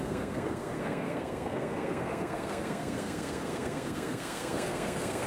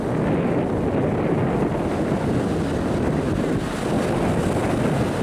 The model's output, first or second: first